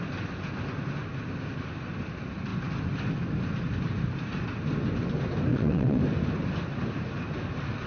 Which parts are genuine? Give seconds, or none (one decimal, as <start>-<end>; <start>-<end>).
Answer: 0.0-5.5; 6.0-7.9